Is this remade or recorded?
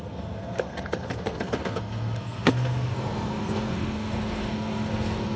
remade